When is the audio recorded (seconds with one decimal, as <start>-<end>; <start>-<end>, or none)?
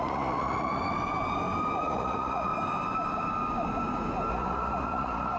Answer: 0.8-1.8; 2.5-4.3